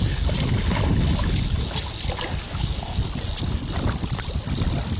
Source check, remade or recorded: recorded